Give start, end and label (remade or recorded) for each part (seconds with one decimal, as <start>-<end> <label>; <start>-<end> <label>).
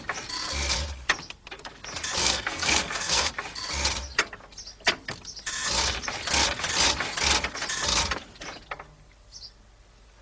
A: 0.0-2.2 recorded; 2.2-3.3 remade; 3.3-10.2 recorded